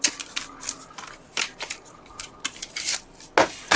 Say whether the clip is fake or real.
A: real